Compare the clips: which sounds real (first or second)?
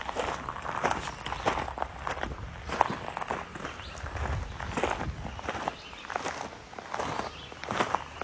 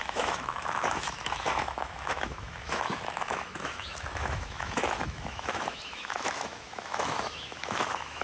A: first